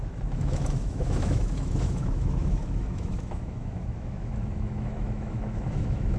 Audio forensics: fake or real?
fake